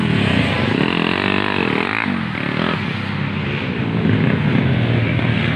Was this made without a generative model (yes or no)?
yes